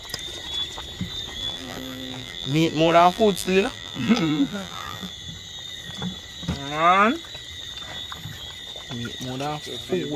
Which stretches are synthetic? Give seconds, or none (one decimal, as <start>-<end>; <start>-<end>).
1.4-5.1